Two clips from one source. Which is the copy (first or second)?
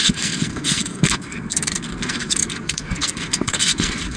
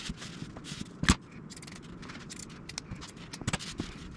first